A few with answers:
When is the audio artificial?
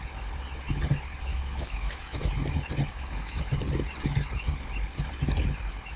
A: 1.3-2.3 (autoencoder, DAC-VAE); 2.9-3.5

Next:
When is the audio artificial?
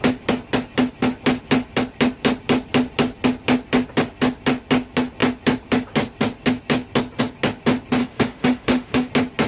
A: 8.0-9.1 (autoencoder, DAC-VAE)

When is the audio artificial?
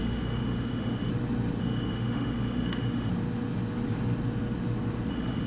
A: 0.0-1.1 (autoencoder, DAC-VAE); 1.6-3.1; 5.1-5.5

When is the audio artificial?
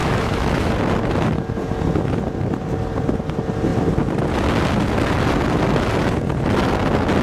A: 0.0-0.7 (autoencoder, DAC-VAE)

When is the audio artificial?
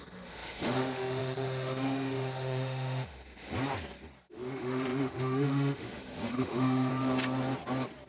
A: 0.0-3.5 (autoencoder, DAC-VAE); 4.3-6.9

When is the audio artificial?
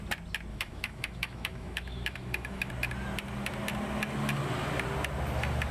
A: 0.5-2.7 (autoencoder, DAC-VAE)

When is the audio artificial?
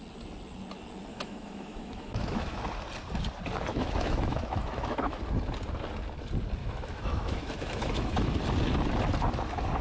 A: 1.1-2.6 (autoencoder, DAC-VAE); 3.7-5.2; 6.6-8.3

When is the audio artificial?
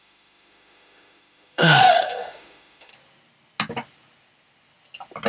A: 0.0-2.9 (autoencoder, DAC-VAE)